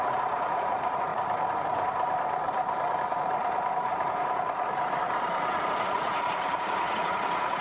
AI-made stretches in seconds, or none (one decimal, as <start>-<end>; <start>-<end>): 0.0-1.1; 5.7-7.6

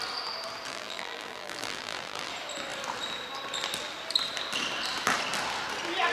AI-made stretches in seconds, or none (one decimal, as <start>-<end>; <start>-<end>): 0.7-2.3

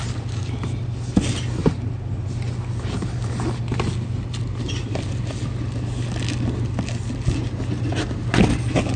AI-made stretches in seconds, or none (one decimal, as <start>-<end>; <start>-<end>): none

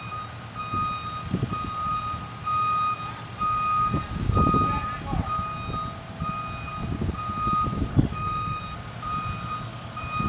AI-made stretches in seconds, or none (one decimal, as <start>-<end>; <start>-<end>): 7.9-8.6

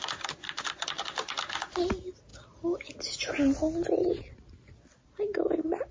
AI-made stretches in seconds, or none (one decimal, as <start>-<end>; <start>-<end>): none

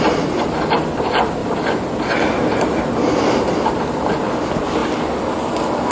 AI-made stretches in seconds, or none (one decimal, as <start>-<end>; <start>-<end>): none

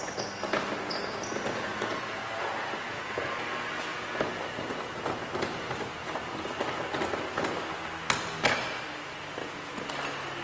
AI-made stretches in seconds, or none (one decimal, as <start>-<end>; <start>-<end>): 1.7-3.2; 9.4-9.9

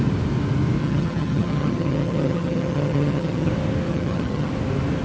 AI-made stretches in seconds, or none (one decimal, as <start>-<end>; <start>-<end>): 0.8-3.5; 3.9-4.5